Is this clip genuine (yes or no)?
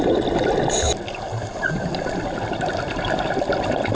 yes